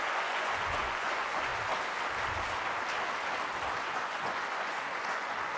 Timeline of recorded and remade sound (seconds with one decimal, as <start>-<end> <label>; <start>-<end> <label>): 0.0-1.5 remade; 1.5-3.8 recorded; 3.8-5.6 remade